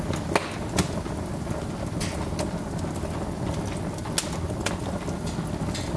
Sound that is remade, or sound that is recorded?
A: recorded